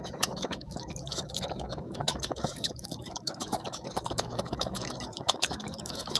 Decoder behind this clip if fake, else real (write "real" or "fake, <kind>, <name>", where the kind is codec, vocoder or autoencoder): fake, autoencoder, DAC-VAE